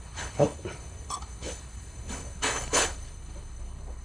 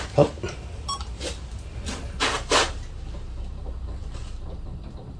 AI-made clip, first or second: first